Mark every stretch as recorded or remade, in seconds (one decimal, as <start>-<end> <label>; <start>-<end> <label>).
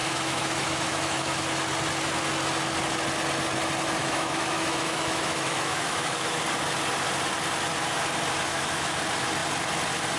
0.0-1.4 remade; 1.4-4.0 recorded; 4.0-6.4 remade; 6.4-8.5 recorded; 8.5-9.0 remade; 9.0-10.2 recorded